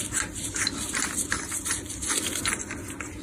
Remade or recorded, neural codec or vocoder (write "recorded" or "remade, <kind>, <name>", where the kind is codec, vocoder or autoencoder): recorded